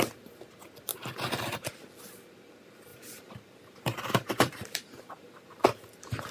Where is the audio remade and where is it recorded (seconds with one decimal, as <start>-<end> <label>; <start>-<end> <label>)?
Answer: 0.0-2.9 recorded; 2.9-6.3 remade